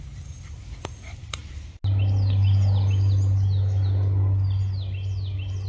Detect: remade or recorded recorded